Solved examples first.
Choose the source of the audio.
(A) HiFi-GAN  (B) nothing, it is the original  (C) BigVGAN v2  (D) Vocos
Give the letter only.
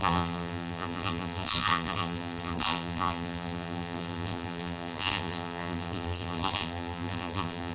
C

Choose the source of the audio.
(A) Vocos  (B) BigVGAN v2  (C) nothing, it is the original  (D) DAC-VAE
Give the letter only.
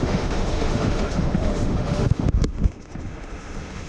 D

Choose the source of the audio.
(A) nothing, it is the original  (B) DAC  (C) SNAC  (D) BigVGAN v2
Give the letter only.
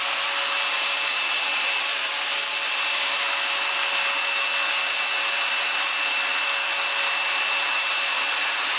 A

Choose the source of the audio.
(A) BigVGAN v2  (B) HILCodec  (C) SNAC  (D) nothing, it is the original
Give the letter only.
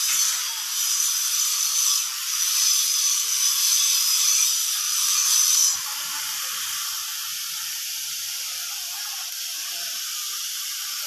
A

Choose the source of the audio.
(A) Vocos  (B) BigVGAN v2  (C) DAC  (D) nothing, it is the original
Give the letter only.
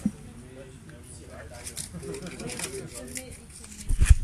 D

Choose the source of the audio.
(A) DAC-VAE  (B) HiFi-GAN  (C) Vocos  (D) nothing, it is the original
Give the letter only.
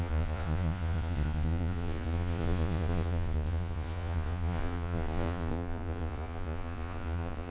C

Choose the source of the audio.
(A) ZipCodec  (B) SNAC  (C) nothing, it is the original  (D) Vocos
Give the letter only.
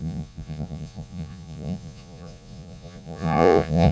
D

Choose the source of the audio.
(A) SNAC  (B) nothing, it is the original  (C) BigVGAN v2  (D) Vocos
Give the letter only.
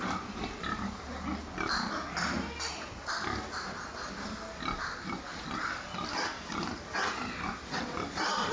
B